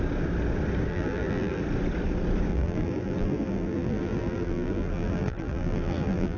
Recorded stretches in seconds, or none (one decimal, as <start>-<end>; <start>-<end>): 0.0-0.9; 1.6-2.5